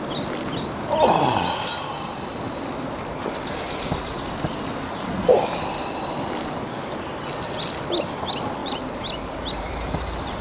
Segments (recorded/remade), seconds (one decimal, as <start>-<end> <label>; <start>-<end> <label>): 0.0-8.6 recorded; 8.6-10.4 remade